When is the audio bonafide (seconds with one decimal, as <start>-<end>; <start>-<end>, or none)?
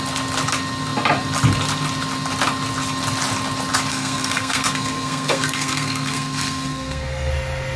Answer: 0.0-3.9; 7.3-7.8